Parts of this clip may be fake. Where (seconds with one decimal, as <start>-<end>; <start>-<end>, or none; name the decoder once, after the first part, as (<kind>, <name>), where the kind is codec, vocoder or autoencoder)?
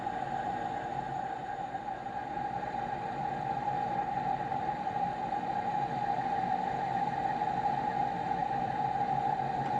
2.2-7.3 (vocoder, BigVGAN v2); 8.4-9.4